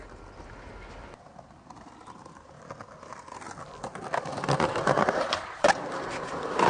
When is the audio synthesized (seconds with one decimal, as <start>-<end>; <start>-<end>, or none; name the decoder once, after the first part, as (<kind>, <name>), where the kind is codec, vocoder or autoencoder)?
0.0-0.7 (vocoder, BigVGAN v2); 4.7-6.7